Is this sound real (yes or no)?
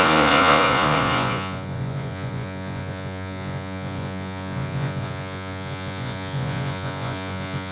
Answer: no